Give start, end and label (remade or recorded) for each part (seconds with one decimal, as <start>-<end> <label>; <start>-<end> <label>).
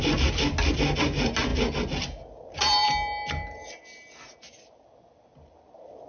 0.0-6.1 recorded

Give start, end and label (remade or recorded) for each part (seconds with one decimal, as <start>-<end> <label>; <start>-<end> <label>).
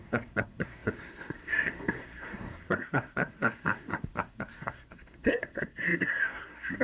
0.0-6.8 remade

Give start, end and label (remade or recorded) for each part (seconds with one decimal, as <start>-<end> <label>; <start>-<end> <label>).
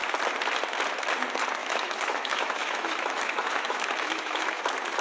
0.0-1.6 recorded; 1.6-4.6 remade; 4.6-5.0 recorded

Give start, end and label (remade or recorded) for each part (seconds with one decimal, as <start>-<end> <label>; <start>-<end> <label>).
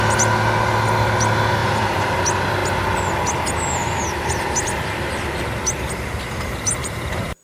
0.0-1.6 recorded; 1.6-2.2 remade; 2.2-6.8 recorded; 6.8-7.4 remade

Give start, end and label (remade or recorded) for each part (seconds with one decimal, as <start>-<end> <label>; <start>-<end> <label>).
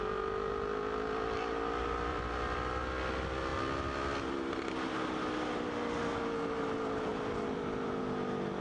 0.0-2.1 recorded; 2.1-2.8 remade; 2.8-7.1 recorded; 7.1-8.0 remade; 8.0-8.6 recorded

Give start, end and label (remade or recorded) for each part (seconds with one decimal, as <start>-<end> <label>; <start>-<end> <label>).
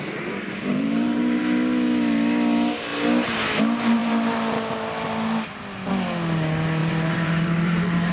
0.0-0.7 recorded; 0.7-1.4 remade; 1.4-6.8 recorded; 6.8-8.1 remade